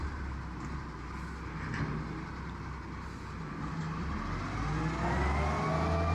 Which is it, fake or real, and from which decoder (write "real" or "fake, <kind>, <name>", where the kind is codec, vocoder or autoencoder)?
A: real